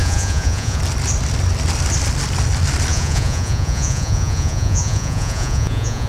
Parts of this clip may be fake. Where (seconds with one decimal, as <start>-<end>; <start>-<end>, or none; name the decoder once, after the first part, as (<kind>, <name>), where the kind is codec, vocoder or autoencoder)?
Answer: 0.0-0.8 (vocoder, Vocos); 2.9-6.1